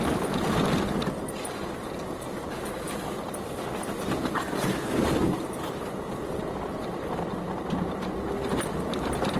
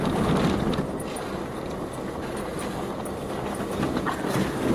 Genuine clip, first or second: second